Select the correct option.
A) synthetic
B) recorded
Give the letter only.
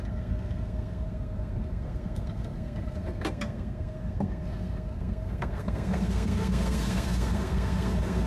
A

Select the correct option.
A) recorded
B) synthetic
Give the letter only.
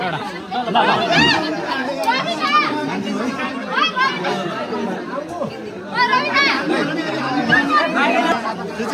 A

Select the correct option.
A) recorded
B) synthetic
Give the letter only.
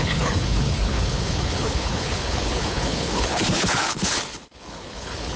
B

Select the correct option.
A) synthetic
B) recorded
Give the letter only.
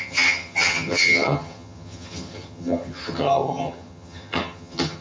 A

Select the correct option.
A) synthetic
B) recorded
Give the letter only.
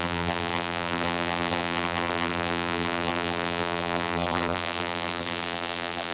A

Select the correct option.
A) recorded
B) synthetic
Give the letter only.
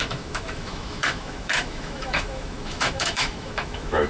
B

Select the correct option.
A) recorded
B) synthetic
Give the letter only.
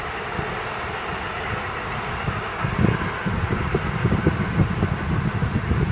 A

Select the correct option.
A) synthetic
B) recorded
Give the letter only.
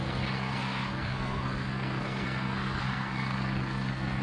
A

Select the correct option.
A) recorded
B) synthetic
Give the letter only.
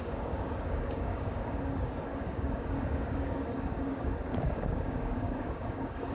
B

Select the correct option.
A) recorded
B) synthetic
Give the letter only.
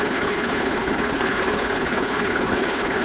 B